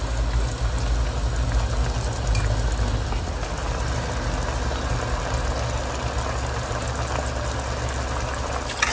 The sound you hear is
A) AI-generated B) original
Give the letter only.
B